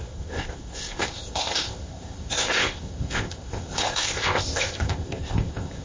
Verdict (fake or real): fake